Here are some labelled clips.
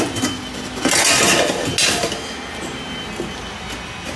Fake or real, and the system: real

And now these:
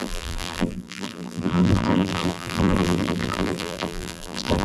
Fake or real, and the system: fake, vocoder, BigVGAN v2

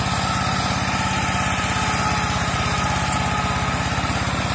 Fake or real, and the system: real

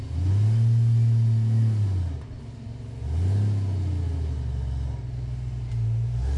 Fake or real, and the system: real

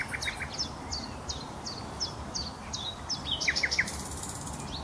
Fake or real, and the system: real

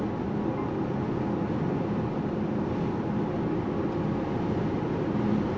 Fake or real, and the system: real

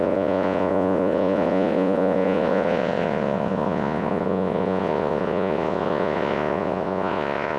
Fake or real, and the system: fake, vocoder, Vocos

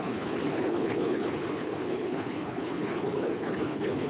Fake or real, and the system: fake, codec, HILCodec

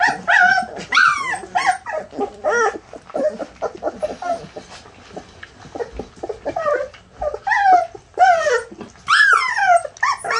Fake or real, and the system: real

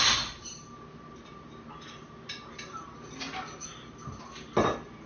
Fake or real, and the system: real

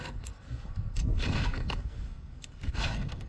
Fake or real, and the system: fake, codec, SNAC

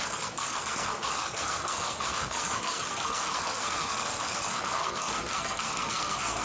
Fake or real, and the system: fake, codec, SNAC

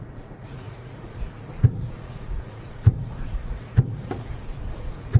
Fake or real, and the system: fake, vocoder, Vocos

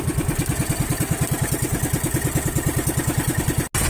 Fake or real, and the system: real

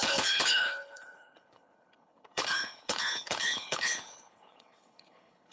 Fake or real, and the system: fake, codec, HILCodec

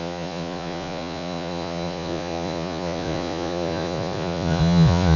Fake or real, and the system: fake, vocoder, Vocos